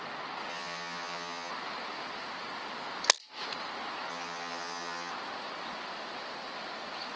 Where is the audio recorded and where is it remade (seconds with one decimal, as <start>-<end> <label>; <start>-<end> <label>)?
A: 0.0-0.5 recorded; 0.5-1.5 remade; 1.5-4.1 recorded; 4.1-5.1 remade; 5.1-7.2 recorded